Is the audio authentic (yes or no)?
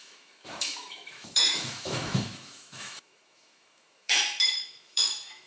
no